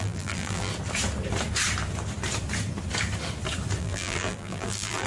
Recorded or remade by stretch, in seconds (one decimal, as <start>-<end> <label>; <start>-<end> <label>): 0.0-0.7 remade; 0.7-3.8 recorded; 3.8-5.1 remade